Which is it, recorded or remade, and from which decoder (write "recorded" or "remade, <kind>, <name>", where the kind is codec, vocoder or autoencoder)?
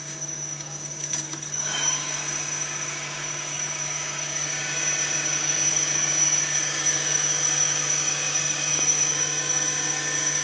remade, codec, DAC